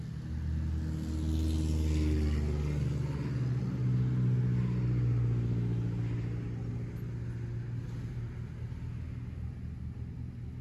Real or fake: real